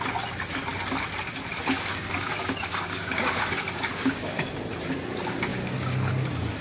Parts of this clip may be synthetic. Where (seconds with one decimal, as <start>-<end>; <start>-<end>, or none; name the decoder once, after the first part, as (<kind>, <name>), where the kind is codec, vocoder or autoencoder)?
1.9-4.4 (codec, DAC); 5.5-6.1